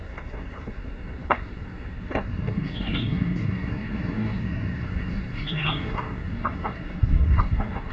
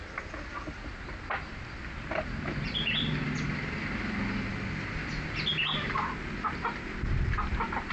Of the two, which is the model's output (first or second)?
first